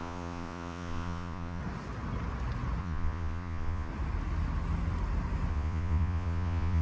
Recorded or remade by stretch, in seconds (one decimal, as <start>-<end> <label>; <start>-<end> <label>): 0.0-1.6 remade; 1.6-2.8 recorded; 2.8-3.9 remade; 3.9-5.5 recorded; 5.5-6.8 remade